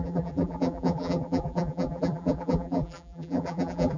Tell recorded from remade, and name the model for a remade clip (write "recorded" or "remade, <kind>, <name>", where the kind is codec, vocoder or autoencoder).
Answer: remade, vocoder, BigVGAN v2